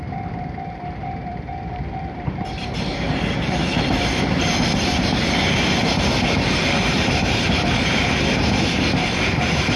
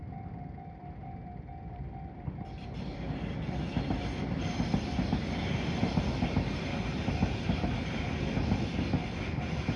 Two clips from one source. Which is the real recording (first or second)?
second